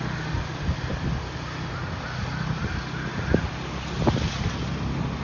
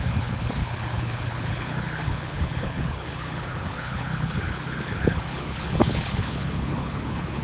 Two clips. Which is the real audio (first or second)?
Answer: first